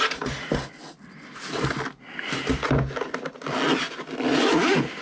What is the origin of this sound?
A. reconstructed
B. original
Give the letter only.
B